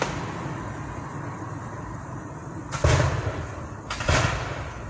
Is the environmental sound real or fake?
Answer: real